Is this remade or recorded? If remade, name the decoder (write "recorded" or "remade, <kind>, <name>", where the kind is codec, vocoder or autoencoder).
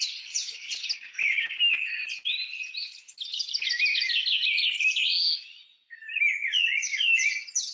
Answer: recorded